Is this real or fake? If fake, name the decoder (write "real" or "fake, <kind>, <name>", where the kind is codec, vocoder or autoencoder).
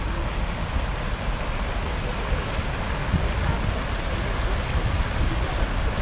real